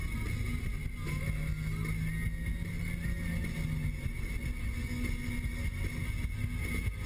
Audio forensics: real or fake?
real